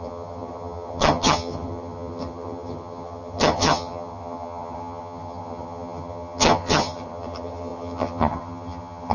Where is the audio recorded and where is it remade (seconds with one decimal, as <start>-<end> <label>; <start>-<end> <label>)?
0.0-9.1 remade